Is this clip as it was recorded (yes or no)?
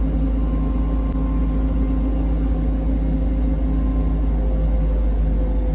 yes